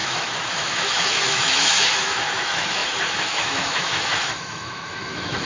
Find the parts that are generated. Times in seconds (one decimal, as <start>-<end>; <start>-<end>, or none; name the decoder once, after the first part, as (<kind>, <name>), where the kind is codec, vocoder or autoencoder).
0.0-5.5 (autoencoder, DAC-VAE)